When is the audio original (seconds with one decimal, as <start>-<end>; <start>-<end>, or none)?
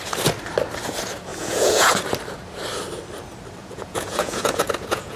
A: 0.0-1.3; 2.0-3.6